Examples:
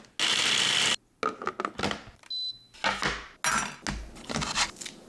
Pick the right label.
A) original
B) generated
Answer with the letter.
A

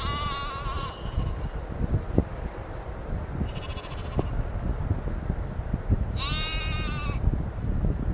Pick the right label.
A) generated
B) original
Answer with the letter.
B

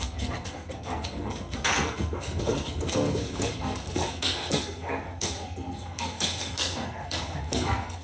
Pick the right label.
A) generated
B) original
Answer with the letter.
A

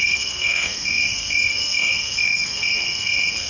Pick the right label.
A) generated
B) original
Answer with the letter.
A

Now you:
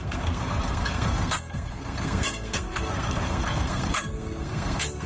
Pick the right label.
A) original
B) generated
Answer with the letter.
B